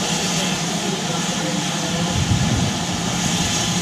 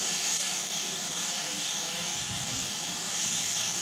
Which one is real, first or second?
first